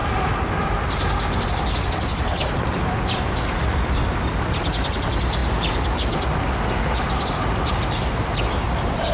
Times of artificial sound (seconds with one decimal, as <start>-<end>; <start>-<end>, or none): none